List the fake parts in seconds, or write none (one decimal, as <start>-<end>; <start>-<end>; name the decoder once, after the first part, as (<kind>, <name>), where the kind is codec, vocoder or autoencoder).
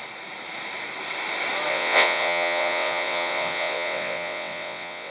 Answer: 1.7-5.1 (vocoder, WaveNeXt)